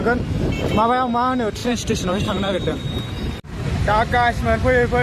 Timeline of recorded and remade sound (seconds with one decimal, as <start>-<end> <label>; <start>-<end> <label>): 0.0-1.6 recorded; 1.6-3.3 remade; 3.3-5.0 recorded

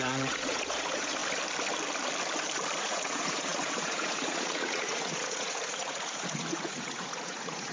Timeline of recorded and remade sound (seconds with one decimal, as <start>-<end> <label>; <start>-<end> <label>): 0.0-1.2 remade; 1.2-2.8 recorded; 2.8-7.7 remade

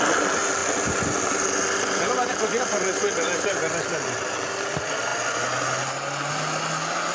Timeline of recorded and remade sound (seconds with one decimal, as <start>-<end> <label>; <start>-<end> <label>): 0.0-7.1 recorded

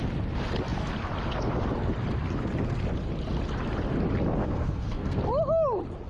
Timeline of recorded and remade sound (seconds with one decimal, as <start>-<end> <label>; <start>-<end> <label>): 0.0-4.4 recorded; 4.4-5.2 remade; 5.2-6.1 recorded

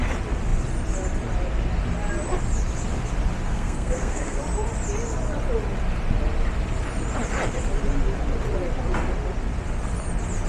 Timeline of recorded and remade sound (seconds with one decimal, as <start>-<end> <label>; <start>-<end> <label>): 0.0-3.5 recorded; 3.5-4.4 remade; 4.4-10.5 recorded

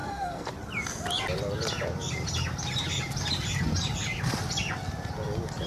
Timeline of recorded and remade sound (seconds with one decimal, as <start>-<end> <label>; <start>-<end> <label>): 0.0-0.5 remade; 0.5-5.7 recorded

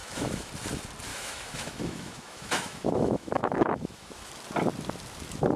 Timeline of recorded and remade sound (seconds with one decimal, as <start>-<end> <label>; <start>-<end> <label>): 0.0-0.5 remade; 0.5-1.1 recorded; 1.1-4.3 remade; 4.3-5.6 recorded

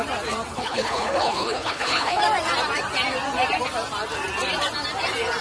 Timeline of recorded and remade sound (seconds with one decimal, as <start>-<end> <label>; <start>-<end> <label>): 0.0-0.5 recorded; 0.5-2.2 remade; 2.2-5.4 recorded